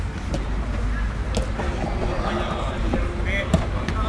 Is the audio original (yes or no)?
yes